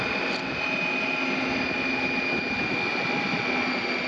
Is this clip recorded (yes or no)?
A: yes